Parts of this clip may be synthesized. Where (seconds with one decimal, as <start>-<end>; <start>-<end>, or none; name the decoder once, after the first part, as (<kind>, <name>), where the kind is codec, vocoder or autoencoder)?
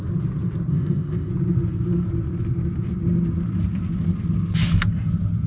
0.7-1.3 (codec, ZipCodec)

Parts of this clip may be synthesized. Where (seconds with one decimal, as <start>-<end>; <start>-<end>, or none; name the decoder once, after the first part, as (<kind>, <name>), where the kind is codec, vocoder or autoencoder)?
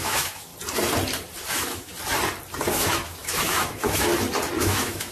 0.0-0.5 (autoencoder, DAC-VAE); 1.5-1.9; 2.7-4.1; 4.6-5.1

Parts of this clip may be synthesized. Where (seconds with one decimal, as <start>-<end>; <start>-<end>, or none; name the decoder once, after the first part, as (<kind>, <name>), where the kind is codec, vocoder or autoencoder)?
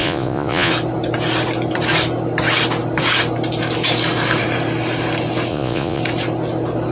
0.0-0.7 (vocoder, Vocos); 5.5-6.0